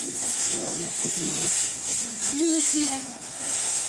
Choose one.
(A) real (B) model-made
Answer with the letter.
B